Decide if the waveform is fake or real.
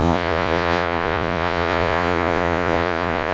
fake